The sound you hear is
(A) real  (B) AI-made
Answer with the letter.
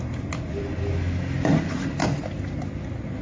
A